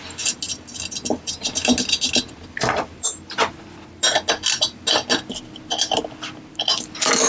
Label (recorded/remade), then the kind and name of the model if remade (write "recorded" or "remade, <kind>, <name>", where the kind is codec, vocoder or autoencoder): recorded